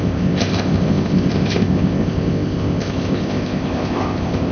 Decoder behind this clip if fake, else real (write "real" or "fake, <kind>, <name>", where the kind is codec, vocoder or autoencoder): fake, codec, ZipCodec